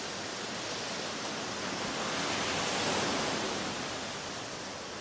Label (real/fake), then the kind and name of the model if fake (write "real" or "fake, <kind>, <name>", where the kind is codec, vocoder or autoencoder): real